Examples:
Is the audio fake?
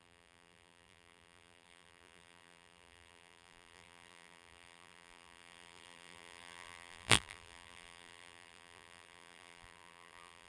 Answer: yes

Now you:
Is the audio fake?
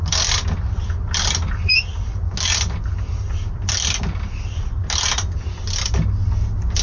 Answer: no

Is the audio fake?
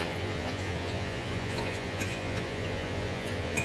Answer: yes